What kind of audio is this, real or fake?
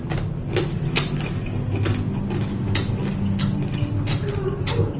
real